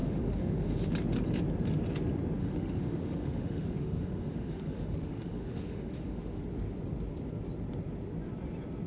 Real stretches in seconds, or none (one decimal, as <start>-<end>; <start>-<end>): 0.9-2.4; 6.4-8.9

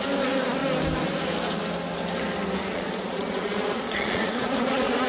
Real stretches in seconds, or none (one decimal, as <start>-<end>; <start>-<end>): 0.0-2.7

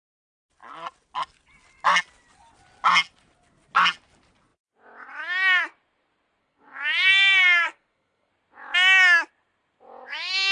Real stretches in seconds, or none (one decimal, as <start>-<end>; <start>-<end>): 0.0-6.4; 8.3-10.5

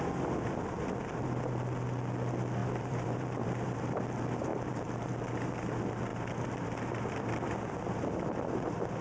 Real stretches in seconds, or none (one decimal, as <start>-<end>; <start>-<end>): 0.0-2.6; 4.0-4.5; 5.5-6.1; 8.5-9.0

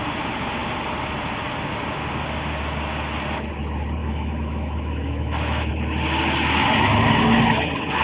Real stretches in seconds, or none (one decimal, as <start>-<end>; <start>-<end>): 0.0-4.0; 5.7-8.0